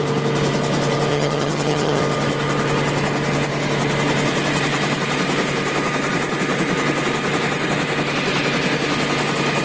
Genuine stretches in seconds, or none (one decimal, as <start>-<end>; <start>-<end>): 0.0-1.1; 2.0-9.6